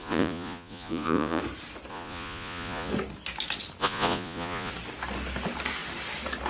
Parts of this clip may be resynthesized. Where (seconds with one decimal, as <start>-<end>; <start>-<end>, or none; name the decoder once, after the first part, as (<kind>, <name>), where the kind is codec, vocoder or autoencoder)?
0.0-1.4 (vocoder, Vocos); 1.9-2.9; 3.8-4.7